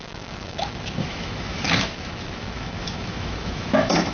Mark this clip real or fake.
fake